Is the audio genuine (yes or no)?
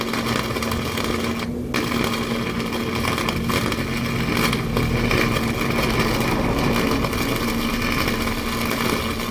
yes